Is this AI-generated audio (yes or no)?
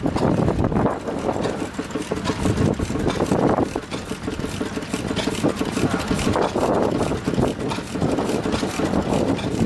no